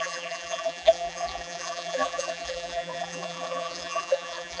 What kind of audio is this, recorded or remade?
remade